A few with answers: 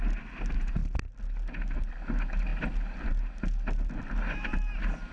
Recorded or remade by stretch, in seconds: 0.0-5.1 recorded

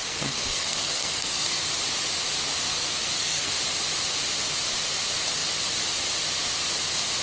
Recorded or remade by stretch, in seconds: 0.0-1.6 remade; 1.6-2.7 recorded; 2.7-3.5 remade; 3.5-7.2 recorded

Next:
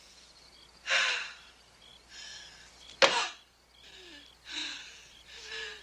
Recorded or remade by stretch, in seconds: 0.0-1.9 recorded; 1.9-2.7 remade; 2.7-5.8 recorded

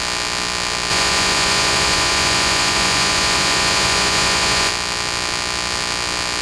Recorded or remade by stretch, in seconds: 0.0-0.9 recorded; 0.9-4.7 remade; 4.7-6.4 recorded

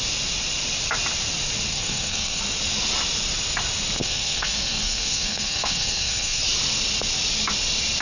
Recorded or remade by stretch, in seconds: 0.0-1.7 recorded; 1.7-2.4 remade; 2.4-4.0 recorded; 4.0-6.4 remade; 6.4-8.0 recorded

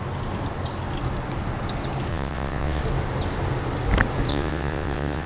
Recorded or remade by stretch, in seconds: 0.0-2.1 recorded; 2.1-2.8 remade; 2.8-4.3 recorded; 4.3-5.3 remade

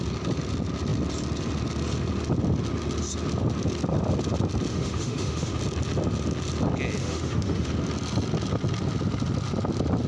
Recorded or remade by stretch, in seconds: 0.0-4.7 recorded; 4.7-5.6 remade; 5.6-7.0 recorded; 7.0-7.7 remade; 7.7-10.1 recorded